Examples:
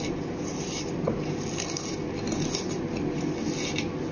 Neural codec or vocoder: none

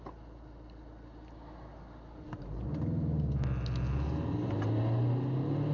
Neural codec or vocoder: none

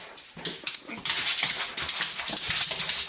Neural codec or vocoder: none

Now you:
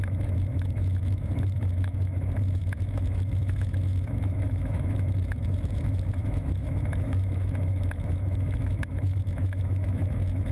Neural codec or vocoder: autoencoder, DAC-VAE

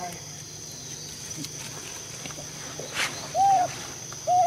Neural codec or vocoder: none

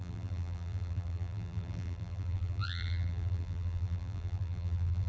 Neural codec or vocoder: vocoder, BigVGAN v2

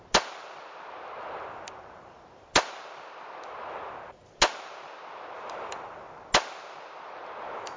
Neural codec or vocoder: none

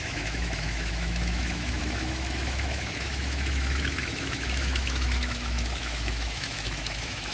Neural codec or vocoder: autoencoder, DAC-VAE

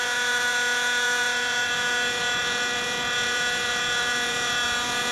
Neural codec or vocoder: vocoder, Vocos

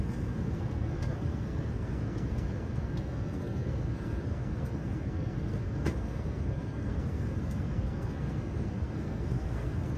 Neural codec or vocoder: codec, SNAC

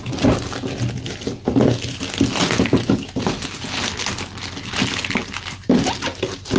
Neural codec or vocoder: none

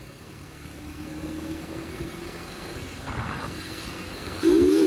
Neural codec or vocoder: codec, SNAC